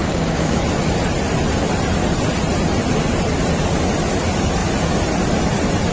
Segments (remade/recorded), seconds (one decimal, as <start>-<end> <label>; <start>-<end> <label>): 0.0-0.6 remade; 0.6-5.9 recorded